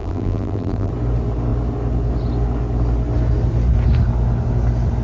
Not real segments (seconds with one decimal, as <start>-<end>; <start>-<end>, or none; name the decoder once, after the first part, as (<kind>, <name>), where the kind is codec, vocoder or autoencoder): 0.0-0.9 (vocoder, BigVGAN v2)